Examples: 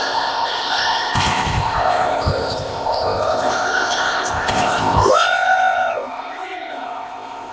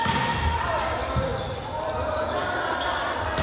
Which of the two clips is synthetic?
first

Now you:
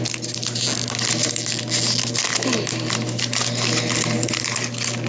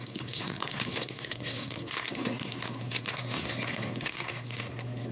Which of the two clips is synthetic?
second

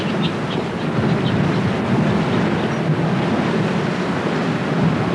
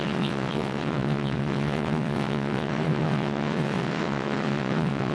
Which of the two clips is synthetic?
second